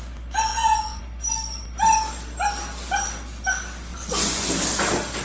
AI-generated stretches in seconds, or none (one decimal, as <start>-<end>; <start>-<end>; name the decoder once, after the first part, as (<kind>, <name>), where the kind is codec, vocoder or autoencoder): 0.5-1.0 (vocoder, Vocos); 3.9-4.5